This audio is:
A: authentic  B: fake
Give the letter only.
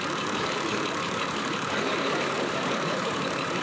B